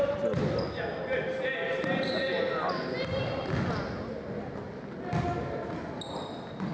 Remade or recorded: recorded